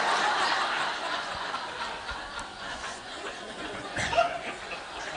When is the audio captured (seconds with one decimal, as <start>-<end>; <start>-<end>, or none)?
0.0-1.0; 1.5-2.5; 4.5-5.2